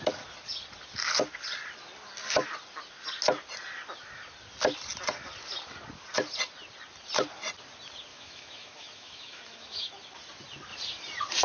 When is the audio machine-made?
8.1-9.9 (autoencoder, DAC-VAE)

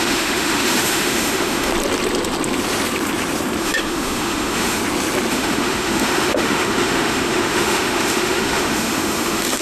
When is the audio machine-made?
0.0-1.7 (autoencoder, DAC-VAE); 3.6-4.8; 5.3-9.6

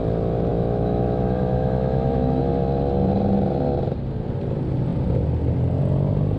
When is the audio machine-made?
0.5-2.4 (autoencoder, DAC-VAE)